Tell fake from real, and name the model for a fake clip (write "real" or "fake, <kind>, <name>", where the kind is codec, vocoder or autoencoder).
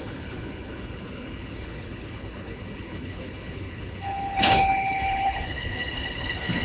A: fake, codec, HILCodec